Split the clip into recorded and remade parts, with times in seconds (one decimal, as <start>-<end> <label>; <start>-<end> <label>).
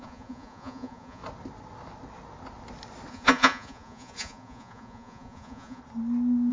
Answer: 0.0-1.2 remade; 1.2-3.1 recorded; 3.1-5.8 remade; 5.8-6.5 recorded